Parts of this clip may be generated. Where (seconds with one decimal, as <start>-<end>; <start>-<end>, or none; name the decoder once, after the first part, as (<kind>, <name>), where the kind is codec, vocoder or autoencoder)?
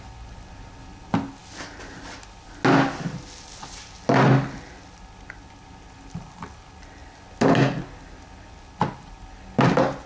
none